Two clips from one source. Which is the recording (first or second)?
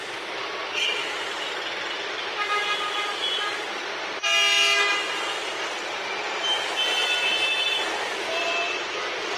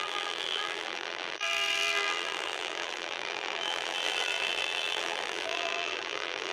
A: first